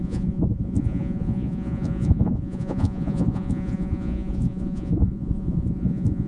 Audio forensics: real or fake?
fake